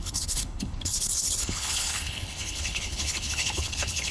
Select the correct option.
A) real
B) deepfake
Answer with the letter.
B